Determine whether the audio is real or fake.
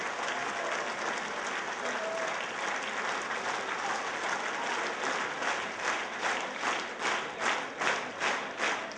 real